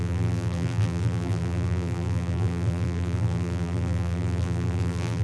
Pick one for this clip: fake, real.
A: fake